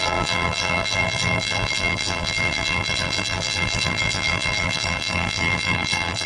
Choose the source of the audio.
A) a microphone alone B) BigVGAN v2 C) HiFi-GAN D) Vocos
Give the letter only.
B